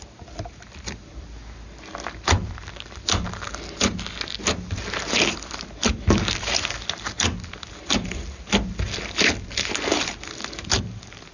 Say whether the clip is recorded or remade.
recorded